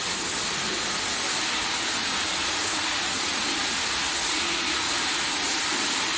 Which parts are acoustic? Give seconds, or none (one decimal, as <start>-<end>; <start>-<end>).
0.0-2.0; 5.6-6.2